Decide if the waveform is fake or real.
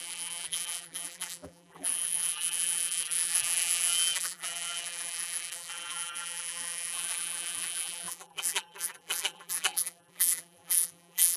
fake